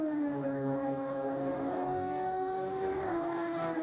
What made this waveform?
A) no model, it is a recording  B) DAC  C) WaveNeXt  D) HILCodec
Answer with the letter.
B